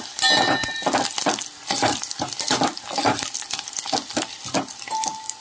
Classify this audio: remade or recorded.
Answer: recorded